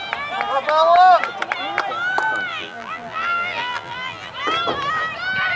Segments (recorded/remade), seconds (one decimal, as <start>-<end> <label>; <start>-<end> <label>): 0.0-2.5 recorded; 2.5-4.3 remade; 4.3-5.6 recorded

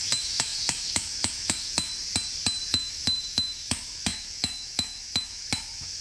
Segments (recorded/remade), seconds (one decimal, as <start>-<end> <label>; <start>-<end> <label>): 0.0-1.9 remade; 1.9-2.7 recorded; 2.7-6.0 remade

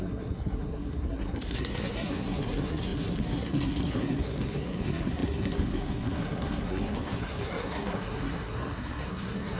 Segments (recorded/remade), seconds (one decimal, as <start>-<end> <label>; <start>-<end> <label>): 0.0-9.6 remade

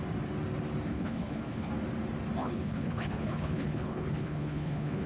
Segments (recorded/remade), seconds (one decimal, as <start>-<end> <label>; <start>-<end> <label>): 0.0-0.9 recorded; 0.9-1.7 remade; 1.7-2.4 recorded; 2.4-5.1 remade

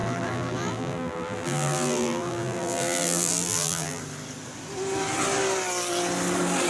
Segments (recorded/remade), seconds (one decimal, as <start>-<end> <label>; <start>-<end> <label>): 0.0-4.0 remade; 4.0-6.7 recorded

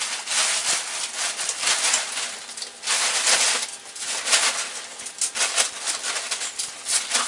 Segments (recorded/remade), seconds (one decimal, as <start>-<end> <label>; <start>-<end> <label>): 0.0-7.3 recorded